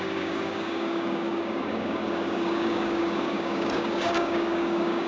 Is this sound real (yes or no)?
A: no